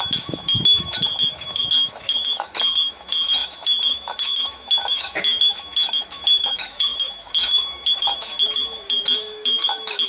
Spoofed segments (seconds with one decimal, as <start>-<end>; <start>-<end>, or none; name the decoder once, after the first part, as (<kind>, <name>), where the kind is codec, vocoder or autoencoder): 0.0-10.1 (autoencoder, DAC-VAE)